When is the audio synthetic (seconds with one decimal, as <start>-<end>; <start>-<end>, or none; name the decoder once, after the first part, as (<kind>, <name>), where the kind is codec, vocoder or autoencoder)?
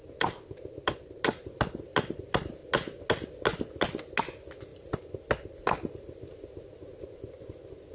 none